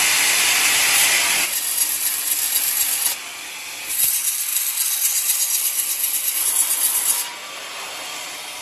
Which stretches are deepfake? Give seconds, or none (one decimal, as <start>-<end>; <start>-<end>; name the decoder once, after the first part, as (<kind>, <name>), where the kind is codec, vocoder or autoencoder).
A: none